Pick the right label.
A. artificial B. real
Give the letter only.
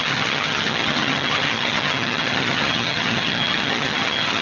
A